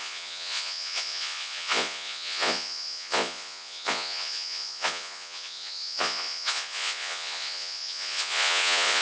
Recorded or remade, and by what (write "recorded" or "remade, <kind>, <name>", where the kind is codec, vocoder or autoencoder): remade, vocoder, Vocos